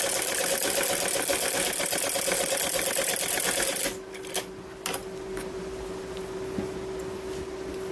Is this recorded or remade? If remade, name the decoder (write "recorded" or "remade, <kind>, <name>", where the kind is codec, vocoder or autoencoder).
recorded